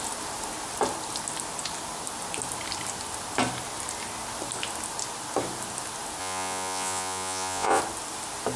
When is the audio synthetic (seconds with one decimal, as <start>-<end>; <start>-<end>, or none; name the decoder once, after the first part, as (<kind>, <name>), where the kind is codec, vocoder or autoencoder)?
6.2-7.8 (vocoder, Vocos)